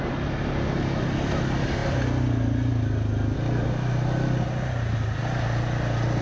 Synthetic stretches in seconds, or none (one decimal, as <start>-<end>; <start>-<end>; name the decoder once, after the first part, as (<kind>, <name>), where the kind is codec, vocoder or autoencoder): none